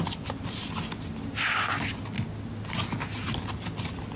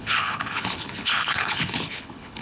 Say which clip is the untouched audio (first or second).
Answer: first